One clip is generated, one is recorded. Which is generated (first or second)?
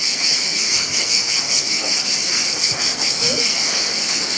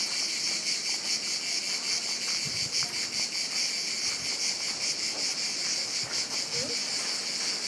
first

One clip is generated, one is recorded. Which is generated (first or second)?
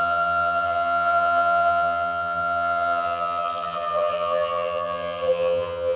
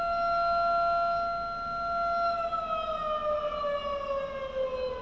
first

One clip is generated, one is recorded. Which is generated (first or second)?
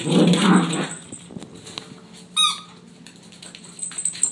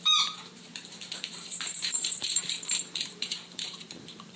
second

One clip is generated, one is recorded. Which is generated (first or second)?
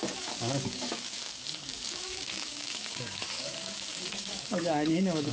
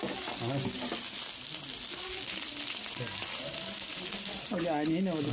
first